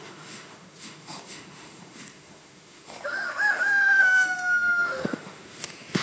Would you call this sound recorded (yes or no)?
no